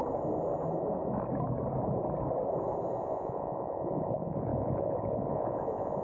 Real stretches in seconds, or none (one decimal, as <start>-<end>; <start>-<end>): 0.0-3.0